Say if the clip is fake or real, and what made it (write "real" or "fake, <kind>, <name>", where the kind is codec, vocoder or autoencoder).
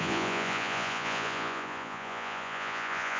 fake, vocoder, Vocos